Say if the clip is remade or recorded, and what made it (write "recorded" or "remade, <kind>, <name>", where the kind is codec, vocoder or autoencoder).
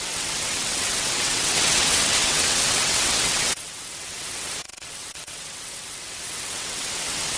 remade, vocoder, WaveNeXt